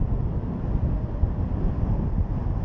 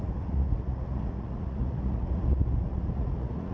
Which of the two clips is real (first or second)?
first